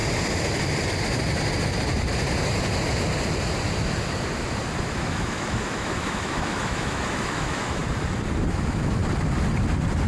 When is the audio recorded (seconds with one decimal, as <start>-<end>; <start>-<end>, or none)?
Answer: 0.0-4.8; 7.8-8.5; 9.0-10.1